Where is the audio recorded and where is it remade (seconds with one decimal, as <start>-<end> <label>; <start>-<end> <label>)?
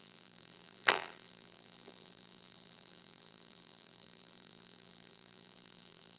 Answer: 0.0-6.2 remade